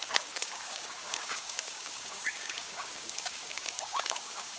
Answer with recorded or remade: remade